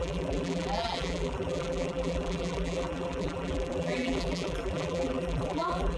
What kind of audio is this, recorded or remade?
remade